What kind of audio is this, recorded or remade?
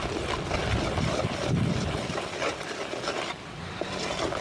recorded